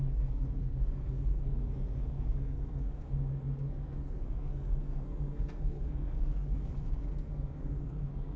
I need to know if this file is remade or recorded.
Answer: remade